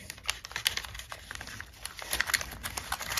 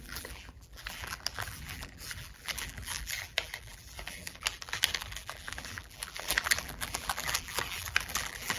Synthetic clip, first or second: second